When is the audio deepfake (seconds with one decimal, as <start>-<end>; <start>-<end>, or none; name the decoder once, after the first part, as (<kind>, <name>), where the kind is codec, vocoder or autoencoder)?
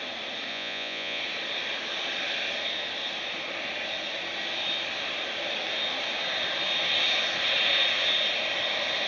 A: 0.5-1.2 (vocoder, Vocos)